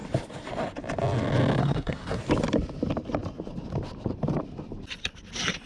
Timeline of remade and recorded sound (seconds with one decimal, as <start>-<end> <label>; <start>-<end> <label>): 0.0-1.6 recorded; 1.6-2.2 remade; 2.2-5.7 recorded